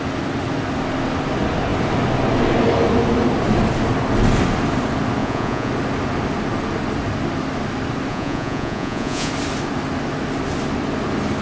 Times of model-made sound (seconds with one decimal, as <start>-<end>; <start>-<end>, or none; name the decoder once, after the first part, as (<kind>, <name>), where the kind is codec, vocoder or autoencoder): 5.2-5.7 (vocoder, Vocos); 8.1-9.3